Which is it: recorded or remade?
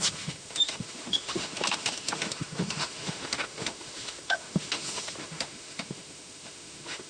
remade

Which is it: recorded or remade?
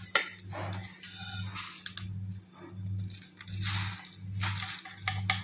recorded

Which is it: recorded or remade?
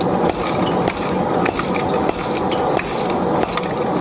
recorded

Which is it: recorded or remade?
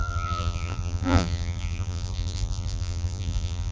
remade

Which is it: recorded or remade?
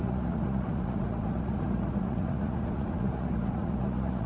remade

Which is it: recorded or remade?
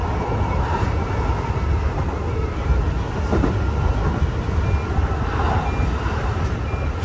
recorded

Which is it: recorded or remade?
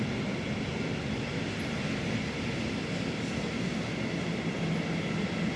recorded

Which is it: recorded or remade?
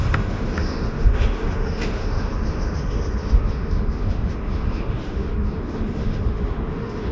remade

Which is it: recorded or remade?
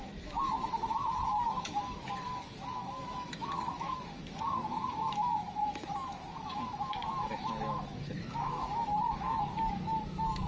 remade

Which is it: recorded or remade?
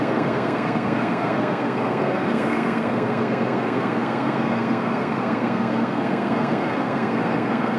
remade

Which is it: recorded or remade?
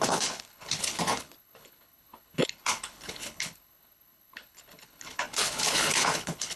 remade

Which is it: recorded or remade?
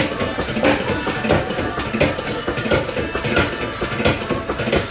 recorded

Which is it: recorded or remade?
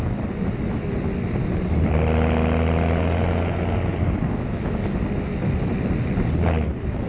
recorded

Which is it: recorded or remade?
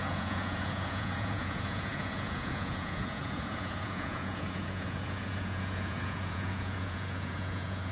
remade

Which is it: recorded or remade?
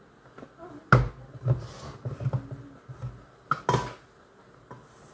recorded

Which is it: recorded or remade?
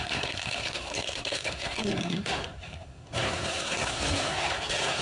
remade